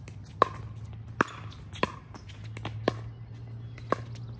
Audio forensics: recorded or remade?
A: recorded